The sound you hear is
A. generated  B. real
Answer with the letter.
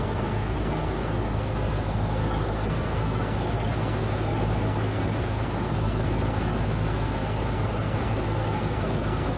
A